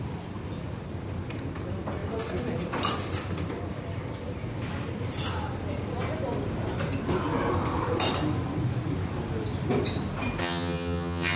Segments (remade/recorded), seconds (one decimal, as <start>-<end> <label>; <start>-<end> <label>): 0.0-10.4 recorded; 10.4-11.4 remade